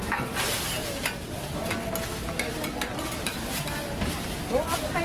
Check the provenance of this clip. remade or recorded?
recorded